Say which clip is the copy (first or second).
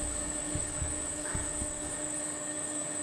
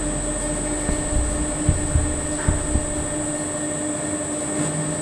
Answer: first